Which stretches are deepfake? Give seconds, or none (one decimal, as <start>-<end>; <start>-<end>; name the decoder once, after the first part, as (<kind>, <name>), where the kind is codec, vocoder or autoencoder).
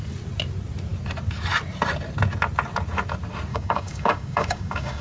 3.5-5.0 (codec, DAC)